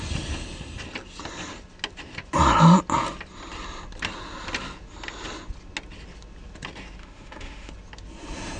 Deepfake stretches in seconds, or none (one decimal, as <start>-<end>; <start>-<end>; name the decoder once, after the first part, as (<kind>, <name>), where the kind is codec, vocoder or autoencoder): 7.0-7.7 (autoencoder, DAC-VAE)